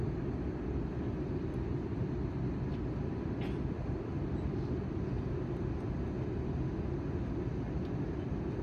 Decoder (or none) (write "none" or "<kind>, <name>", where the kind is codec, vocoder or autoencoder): none